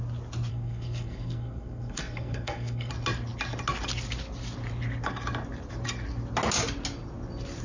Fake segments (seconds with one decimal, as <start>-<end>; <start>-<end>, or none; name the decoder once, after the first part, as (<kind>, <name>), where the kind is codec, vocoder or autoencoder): 0.5-2.9 (codec, SNAC)